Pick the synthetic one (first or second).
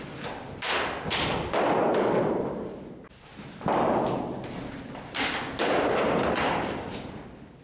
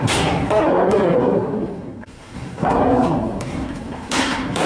second